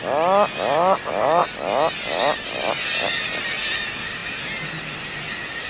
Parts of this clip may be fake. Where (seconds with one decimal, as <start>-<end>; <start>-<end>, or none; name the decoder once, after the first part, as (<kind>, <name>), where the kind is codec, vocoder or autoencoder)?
none